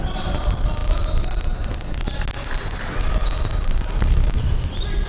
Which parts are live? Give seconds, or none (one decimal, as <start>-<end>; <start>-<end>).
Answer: 0.0-5.1